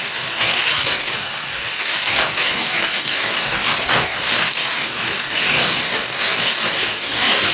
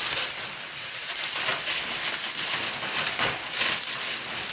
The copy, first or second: first